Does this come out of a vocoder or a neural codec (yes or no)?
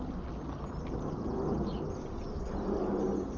no